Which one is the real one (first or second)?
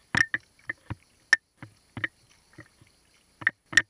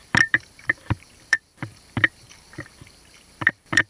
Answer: first